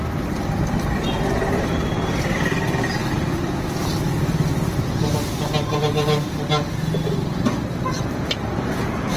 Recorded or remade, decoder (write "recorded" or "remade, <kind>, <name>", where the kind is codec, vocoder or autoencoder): recorded